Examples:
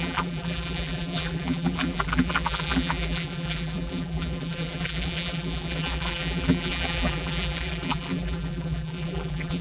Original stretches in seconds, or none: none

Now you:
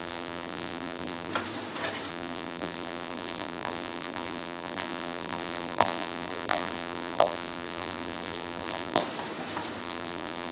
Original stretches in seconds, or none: 1.3-2.1; 9.0-9.8

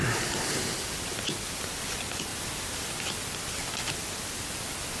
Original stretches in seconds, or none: 0.0-2.3; 3.0-5.0